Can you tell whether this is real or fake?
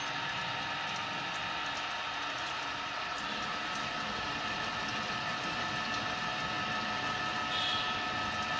real